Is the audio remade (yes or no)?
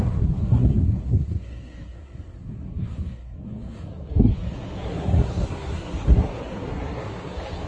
yes